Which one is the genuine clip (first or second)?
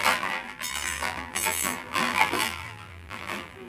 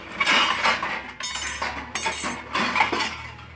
second